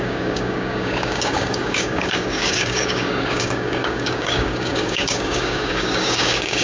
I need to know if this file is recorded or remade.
remade